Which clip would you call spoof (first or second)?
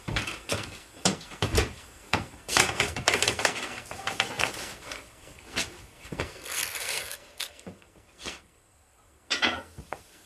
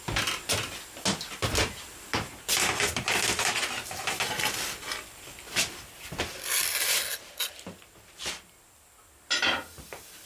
first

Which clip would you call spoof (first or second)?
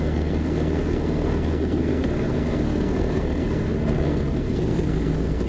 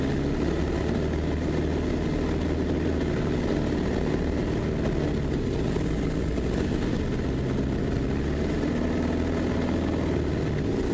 first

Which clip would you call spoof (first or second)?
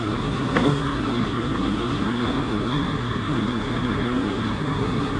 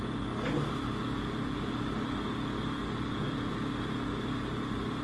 first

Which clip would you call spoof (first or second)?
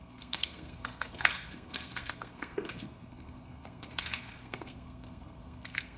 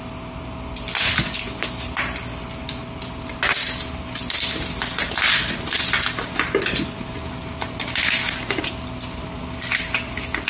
first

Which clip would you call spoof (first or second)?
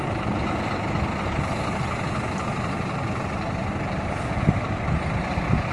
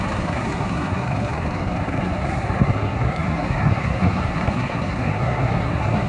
second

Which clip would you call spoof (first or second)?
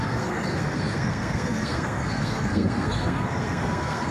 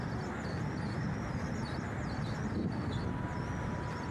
first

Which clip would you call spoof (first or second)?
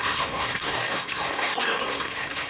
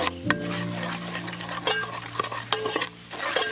first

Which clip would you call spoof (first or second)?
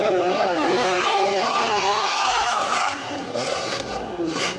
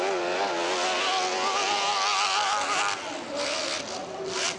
first